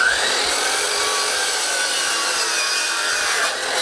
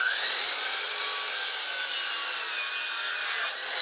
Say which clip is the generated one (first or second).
first